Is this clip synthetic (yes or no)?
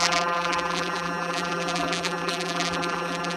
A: yes